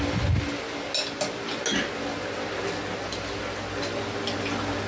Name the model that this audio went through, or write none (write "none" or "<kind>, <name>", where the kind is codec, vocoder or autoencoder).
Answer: none